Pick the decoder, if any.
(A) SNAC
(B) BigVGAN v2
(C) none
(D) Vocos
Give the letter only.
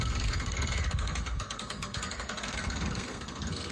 A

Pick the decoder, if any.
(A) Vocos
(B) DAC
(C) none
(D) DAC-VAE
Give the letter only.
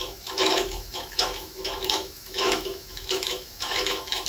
D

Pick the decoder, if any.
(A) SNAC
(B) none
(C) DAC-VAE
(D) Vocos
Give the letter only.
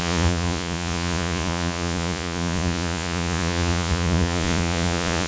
D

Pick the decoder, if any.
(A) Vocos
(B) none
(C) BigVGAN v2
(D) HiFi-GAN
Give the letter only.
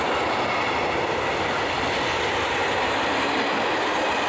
B